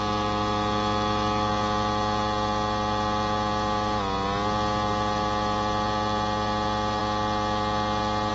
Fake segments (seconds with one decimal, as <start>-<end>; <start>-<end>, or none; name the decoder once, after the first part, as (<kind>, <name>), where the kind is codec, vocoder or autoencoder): none